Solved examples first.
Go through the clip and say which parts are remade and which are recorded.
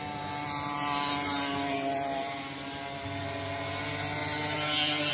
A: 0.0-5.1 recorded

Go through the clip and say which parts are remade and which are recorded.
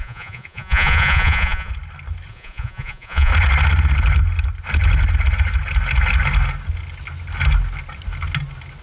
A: 0.0-1.7 remade; 1.7-2.3 recorded; 2.3-3.3 remade; 3.3-8.8 recorded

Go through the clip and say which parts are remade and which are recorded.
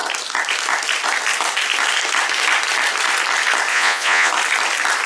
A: 0.0-3.7 recorded; 3.7-4.3 remade; 4.3-5.1 recorded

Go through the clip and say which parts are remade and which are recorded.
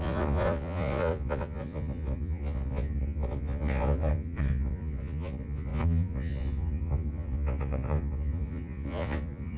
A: 0.0-9.6 remade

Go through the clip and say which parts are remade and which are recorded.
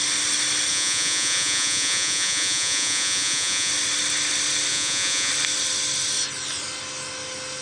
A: 0.0-0.7 recorded; 0.7-3.7 remade; 3.7-4.7 recorded; 4.7-5.3 remade; 5.3-7.6 recorded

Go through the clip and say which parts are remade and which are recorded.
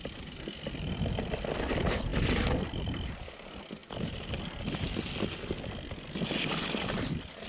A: 0.0-7.5 recorded